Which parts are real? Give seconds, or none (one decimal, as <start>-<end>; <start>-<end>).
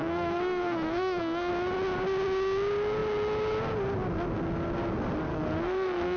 1.5-5.3